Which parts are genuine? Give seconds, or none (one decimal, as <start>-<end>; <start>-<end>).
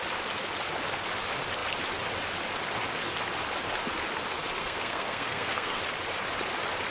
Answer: 0.0-4.6; 5.8-6.9